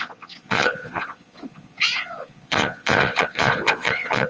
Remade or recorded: remade